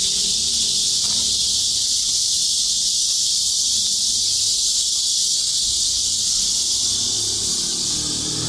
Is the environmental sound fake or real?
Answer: real